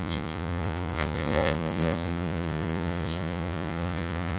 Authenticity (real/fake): fake